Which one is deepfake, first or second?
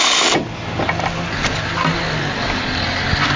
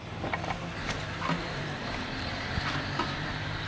second